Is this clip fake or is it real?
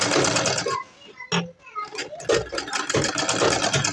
real